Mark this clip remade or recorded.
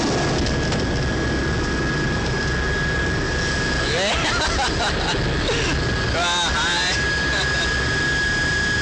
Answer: recorded